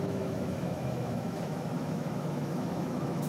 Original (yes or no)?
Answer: no